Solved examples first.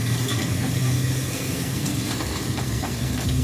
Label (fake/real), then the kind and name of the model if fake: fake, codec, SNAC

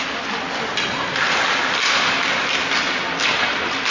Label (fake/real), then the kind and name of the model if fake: real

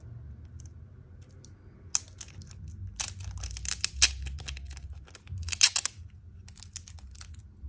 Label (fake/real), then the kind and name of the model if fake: real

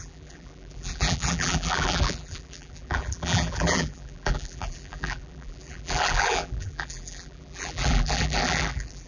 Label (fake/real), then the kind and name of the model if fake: fake, vocoder, BigVGAN v2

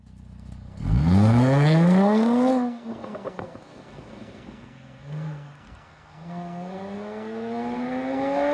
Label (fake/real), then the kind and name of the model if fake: fake, codec, SNAC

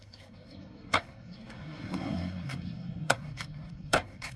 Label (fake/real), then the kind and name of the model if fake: fake, codec, SNAC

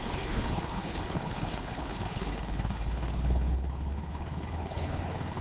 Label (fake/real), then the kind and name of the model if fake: fake, codec, HILCodec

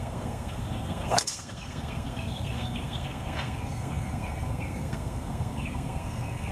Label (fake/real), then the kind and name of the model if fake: fake, codec, SNAC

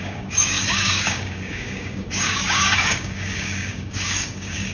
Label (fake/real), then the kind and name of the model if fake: fake, codec, DAC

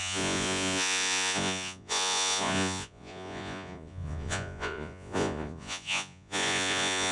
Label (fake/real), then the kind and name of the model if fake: fake, vocoder, Vocos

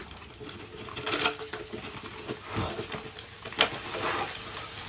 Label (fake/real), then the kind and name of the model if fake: real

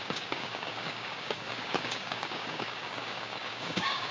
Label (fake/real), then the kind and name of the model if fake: fake, codec, DAC